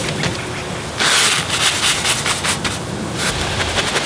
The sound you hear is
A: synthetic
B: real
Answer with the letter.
B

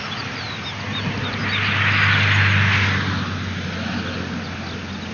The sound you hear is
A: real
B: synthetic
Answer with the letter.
A